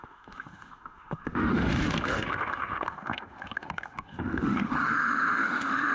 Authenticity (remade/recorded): remade